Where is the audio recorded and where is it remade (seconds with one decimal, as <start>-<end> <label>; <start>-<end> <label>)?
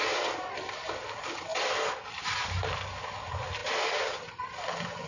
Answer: 0.0-5.1 recorded